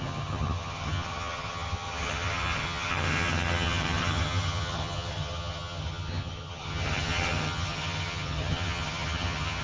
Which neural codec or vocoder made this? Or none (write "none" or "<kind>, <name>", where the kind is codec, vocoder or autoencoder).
vocoder, HiFi-GAN